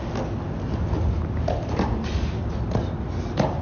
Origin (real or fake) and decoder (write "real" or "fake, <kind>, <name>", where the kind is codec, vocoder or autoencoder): real